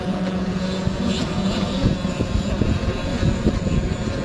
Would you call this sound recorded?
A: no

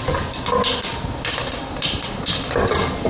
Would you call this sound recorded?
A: yes